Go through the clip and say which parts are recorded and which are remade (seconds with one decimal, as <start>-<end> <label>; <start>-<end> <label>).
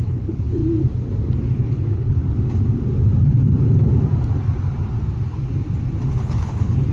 0.0-0.6 remade; 0.6-1.5 recorded; 1.5-2.2 remade; 2.2-6.1 recorded; 6.1-6.9 remade